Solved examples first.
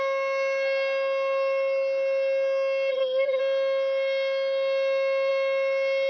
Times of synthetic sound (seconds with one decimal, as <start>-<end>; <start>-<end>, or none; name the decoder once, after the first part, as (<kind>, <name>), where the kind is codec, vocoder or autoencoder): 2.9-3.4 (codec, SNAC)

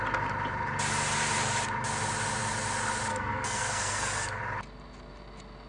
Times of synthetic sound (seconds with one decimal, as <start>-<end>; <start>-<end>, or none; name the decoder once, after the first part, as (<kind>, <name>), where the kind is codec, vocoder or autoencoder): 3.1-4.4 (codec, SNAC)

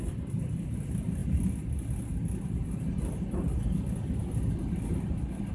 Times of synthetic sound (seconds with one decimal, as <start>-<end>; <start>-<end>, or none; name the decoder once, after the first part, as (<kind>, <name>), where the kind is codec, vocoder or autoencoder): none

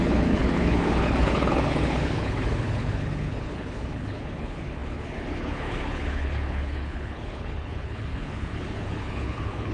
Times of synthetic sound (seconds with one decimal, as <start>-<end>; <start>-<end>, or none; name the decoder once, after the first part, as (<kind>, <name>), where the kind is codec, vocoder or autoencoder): 0.0-9.7 (codec, HILCodec)

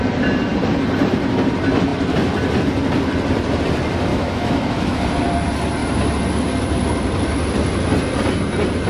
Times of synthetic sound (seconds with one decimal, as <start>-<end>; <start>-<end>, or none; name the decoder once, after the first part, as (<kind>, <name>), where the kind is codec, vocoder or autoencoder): 4.1-5.0 (autoencoder, DAC-VAE)